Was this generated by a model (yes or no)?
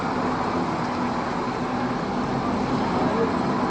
no